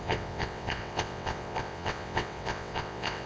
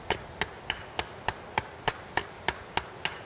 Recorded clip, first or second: second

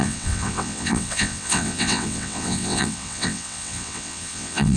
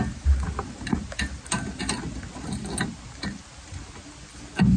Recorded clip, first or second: second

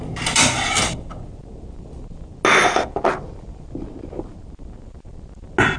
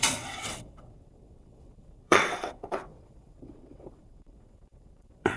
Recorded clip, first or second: first